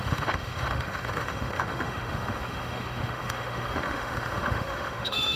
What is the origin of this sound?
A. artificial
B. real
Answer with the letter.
A